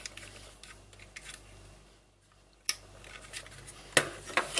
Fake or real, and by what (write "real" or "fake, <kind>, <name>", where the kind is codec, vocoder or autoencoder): real